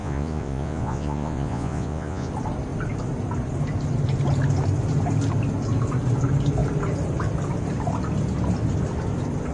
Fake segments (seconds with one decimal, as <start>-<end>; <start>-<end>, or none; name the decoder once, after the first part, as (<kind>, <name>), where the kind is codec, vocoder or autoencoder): 0.0-2.3 (vocoder, Vocos)